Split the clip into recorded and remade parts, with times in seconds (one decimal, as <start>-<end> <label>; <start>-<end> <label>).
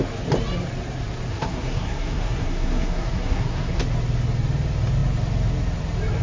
0.0-1.3 recorded; 1.3-3.8 remade; 3.8-6.2 recorded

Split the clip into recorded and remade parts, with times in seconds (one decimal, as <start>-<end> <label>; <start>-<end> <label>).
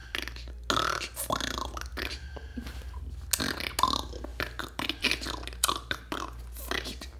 0.0-0.5 remade; 0.5-4.3 recorded; 4.3-6.4 remade; 6.4-7.2 recorded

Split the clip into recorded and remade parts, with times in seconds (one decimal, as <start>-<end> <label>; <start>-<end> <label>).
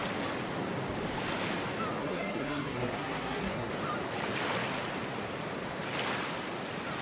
0.0-2.0 recorded; 2.0-3.7 remade; 3.7-7.0 recorded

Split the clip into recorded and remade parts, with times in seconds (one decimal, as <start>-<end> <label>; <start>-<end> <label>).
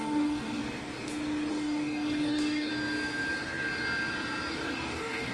0.0-0.6 remade; 0.6-1.5 recorded; 1.5-2.7 remade; 2.7-4.5 recorded; 4.5-5.3 remade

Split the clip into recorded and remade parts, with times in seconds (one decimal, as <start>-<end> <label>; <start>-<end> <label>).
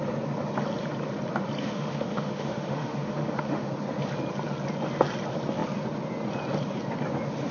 0.0-1.6 recorded; 1.6-3.7 remade; 3.7-7.5 recorded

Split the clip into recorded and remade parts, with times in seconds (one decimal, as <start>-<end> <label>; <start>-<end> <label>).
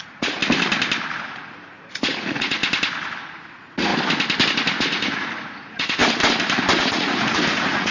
0.0-0.4 remade; 0.4-1.2 recorded; 1.2-2.6 remade; 2.6-3.2 recorded; 3.2-3.9 remade; 3.9-4.8 recorded; 4.8-6.0 remade; 6.0-6.8 recorded; 6.8-7.9 remade